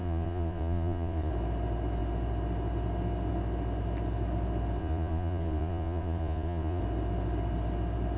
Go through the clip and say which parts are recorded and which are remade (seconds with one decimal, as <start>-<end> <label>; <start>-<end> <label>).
0.0-1.3 remade; 1.3-4.8 recorded; 4.8-6.8 remade; 6.8-8.2 recorded